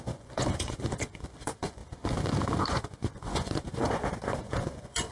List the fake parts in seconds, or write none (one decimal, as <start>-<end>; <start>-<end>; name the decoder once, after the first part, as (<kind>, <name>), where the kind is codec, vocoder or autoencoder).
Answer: 0.0-1.8 (vocoder, Vocos); 2.6-5.1